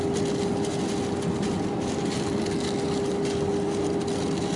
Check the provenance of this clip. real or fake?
real